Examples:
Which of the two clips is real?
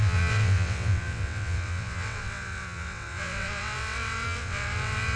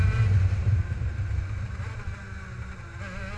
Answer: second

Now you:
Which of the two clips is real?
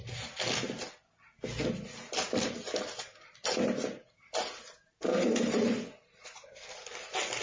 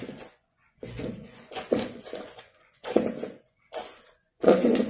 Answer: first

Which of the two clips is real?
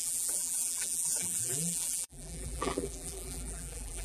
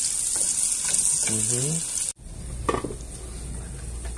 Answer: second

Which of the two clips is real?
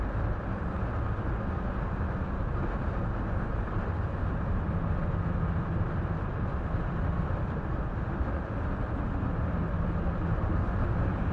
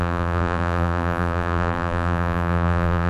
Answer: first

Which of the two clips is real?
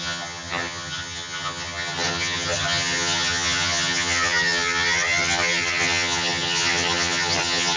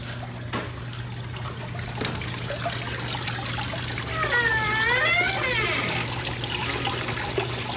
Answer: second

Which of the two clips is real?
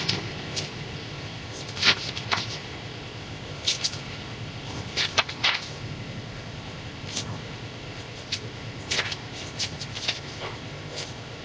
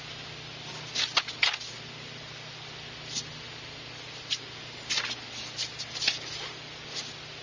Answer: second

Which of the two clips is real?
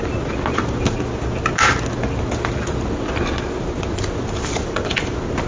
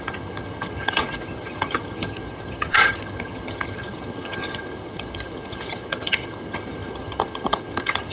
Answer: first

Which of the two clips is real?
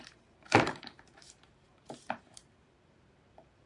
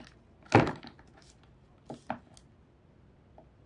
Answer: second